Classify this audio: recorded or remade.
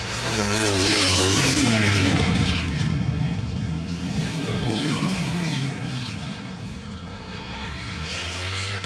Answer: remade